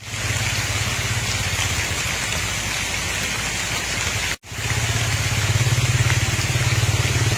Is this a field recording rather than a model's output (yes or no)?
yes